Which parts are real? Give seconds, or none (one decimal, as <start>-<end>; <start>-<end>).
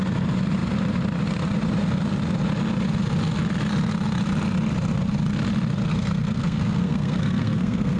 0.0-5.9